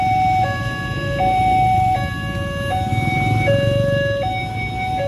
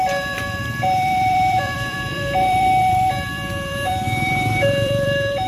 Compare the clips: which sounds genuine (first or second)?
first